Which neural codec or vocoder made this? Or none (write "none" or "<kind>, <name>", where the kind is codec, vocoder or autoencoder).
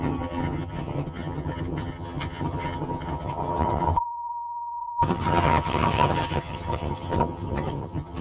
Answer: vocoder, HiFi-GAN